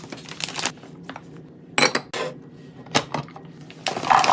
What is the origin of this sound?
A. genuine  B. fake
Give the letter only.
A